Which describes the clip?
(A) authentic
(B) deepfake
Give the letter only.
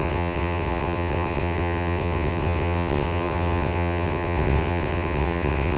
B